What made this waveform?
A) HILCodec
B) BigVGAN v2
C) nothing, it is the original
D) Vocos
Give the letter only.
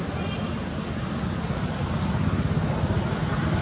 C